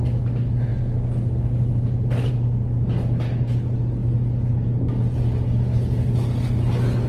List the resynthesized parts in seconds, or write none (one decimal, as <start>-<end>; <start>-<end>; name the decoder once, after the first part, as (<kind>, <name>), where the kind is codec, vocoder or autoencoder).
none